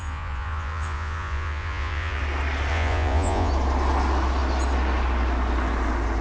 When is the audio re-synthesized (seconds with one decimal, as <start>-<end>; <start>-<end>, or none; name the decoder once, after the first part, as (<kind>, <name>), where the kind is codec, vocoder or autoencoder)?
0.0-2.2 (vocoder, Vocos); 2.7-3.5